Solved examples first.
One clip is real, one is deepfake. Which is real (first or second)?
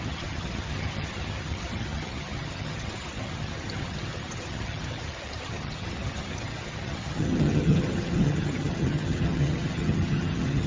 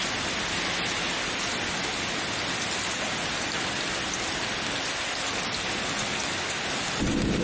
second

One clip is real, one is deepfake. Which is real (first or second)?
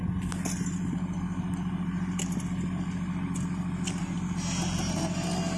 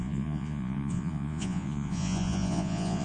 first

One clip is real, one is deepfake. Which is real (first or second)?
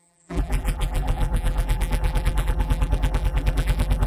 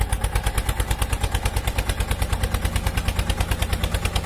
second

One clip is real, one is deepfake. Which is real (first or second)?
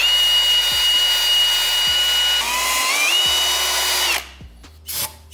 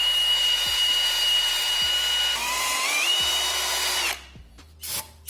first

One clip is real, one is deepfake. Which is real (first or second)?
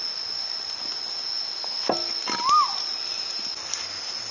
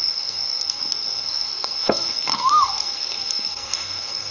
first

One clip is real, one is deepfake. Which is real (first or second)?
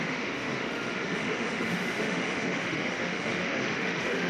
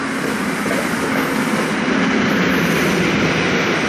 second